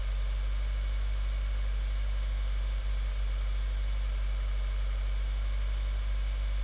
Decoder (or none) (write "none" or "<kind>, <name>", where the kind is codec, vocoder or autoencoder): none